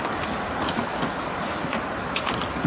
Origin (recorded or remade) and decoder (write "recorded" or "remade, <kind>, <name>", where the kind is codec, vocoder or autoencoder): recorded